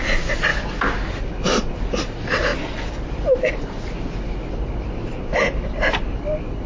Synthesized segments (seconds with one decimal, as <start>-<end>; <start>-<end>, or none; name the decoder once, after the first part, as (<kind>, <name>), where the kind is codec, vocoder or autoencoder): none

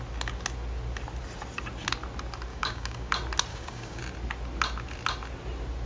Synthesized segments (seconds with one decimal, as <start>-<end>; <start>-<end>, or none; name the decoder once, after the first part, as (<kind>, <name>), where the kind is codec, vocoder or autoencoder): 2.5-3.1 (codec, DAC); 3.5-4.0

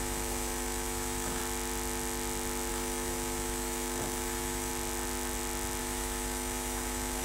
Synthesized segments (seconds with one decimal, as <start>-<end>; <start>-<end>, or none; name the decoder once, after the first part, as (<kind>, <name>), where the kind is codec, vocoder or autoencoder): 0.0-1.4 (autoencoder, DAC-VAE); 2.7-4.7; 5.8-7.2

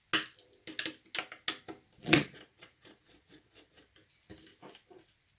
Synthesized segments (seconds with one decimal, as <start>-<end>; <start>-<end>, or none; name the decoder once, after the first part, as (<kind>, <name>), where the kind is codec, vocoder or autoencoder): 2.0-3.7 (vocoder, Vocos)

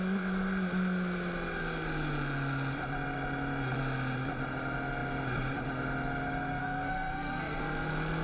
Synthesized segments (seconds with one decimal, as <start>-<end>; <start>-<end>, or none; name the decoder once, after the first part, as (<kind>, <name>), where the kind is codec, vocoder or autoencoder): 6.6-7.6 (codec, SNAC)